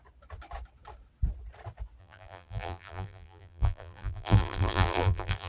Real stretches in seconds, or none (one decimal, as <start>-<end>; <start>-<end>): 0.0-2.0

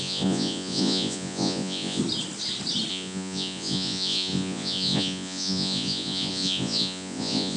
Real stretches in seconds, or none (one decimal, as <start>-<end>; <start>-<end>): 2.0-2.9

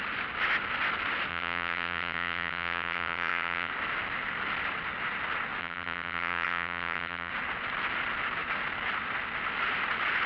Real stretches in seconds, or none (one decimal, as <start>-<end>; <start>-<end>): 0.0-1.3; 3.7-5.6; 7.3-10.3

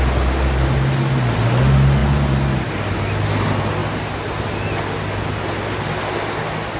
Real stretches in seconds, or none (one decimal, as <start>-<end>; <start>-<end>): 0.0-6.8

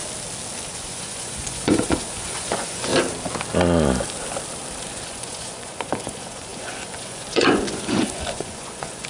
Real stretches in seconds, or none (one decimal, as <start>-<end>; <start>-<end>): 0.0-0.7; 2.9-4.8